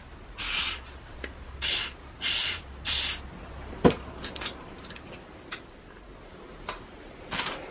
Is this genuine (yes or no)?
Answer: yes